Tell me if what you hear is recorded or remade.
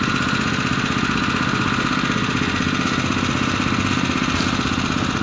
recorded